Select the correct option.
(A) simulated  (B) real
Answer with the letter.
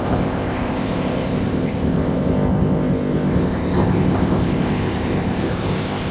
A